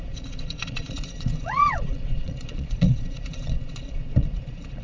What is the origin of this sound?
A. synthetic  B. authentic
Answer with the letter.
A